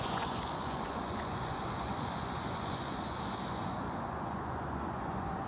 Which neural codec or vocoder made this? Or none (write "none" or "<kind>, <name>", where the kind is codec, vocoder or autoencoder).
vocoder, Vocos